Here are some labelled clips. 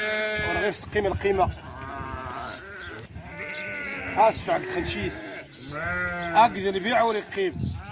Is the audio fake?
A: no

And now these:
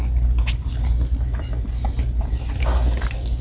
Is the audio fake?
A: no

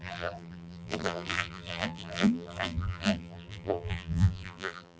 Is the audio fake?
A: yes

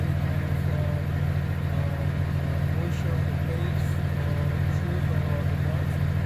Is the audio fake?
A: no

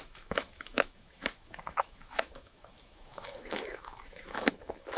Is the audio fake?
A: yes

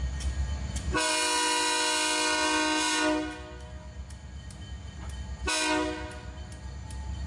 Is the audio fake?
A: no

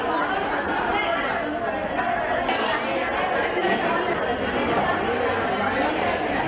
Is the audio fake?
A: no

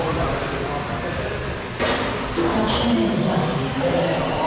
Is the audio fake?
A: no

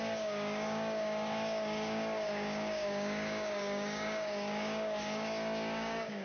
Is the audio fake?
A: yes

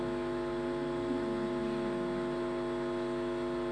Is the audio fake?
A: no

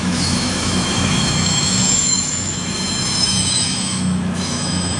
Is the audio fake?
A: yes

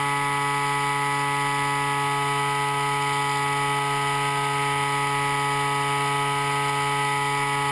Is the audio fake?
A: no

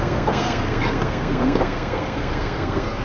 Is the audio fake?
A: yes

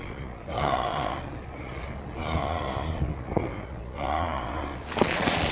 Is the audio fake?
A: yes